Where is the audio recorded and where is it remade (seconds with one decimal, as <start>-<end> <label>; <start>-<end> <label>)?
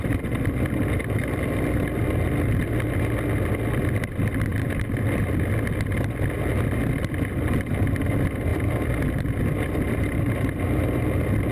0.0-4.5 recorded; 4.5-5.5 remade; 5.5-8.5 recorded; 8.5-10.6 remade; 10.6-11.5 recorded